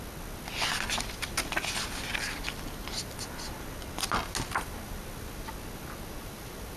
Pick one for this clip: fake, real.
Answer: real